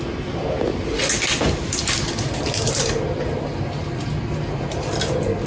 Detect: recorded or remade recorded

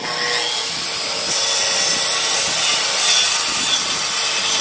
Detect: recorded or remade recorded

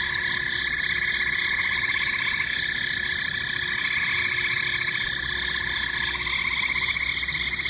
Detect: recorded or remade recorded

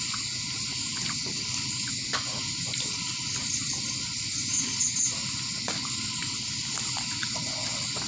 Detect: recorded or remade recorded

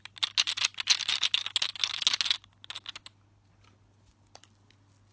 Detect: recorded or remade recorded